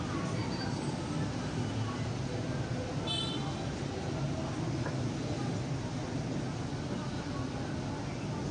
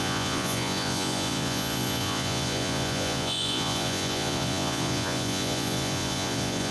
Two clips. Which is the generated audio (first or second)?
second